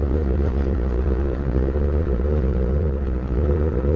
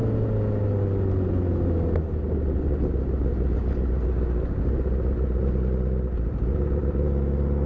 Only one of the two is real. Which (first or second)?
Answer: second